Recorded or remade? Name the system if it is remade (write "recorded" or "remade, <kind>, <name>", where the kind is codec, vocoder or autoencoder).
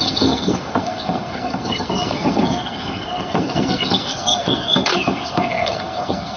remade, codec, SNAC